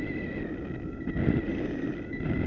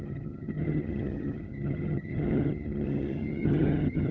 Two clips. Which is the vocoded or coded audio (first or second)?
second